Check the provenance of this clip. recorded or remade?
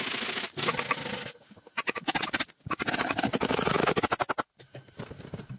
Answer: recorded